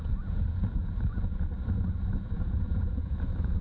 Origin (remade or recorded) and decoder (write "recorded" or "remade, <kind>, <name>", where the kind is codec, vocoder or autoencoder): remade, vocoder, Vocos